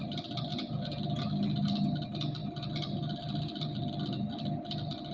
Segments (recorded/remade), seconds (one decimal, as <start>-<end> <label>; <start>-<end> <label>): 0.0-0.5 recorded; 0.5-1.0 remade; 1.0-5.1 recorded